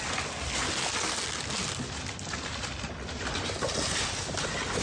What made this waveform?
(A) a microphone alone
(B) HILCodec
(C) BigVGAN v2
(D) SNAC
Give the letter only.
A